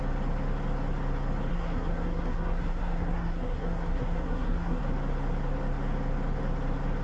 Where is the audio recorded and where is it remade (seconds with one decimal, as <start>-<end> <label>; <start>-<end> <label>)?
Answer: 0.0-1.5 recorded; 1.5-4.8 remade; 4.8-7.0 recorded